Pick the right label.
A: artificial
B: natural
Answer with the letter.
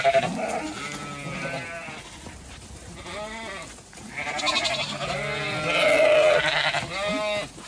B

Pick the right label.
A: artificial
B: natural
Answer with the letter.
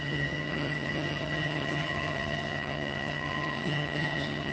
A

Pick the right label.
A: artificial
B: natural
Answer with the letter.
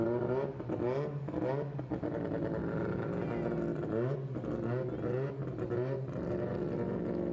B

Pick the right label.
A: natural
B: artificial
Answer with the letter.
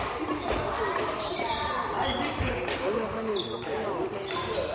A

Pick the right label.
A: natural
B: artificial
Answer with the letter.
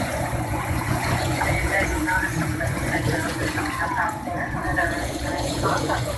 B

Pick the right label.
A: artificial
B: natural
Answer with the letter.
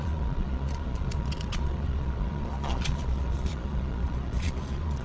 A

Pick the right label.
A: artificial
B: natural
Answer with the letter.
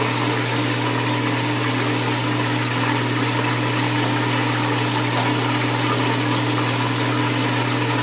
B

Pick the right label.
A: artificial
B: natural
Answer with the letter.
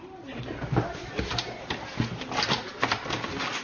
B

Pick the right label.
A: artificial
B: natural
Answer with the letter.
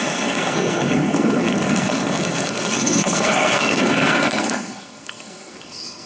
A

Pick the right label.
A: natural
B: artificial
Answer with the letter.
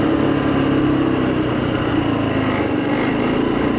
A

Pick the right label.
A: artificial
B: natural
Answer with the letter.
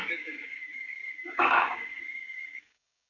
A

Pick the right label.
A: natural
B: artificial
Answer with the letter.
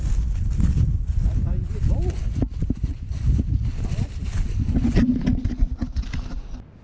A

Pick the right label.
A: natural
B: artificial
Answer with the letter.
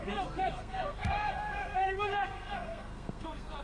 B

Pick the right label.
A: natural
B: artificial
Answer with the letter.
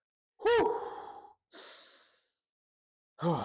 B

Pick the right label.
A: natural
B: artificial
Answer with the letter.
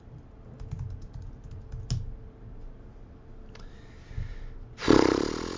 A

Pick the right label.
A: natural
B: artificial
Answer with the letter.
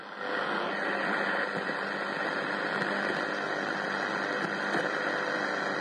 A